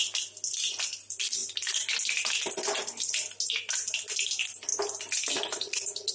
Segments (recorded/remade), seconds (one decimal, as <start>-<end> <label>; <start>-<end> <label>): 0.0-6.1 recorded